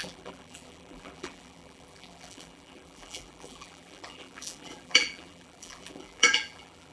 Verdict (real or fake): fake